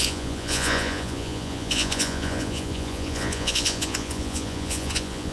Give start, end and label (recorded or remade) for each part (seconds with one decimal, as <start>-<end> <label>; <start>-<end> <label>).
0.0-5.3 remade